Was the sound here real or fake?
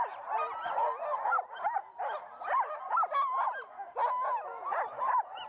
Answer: real